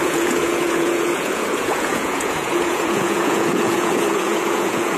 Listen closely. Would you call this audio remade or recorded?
remade